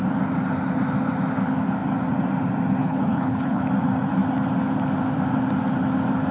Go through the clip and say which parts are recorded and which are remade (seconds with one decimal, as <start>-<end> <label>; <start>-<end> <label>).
0.0-2.8 recorded; 2.8-3.6 remade; 3.6-6.3 recorded